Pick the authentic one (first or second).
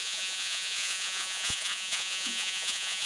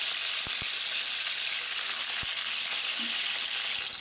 second